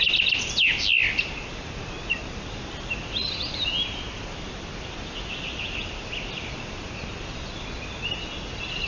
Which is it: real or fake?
real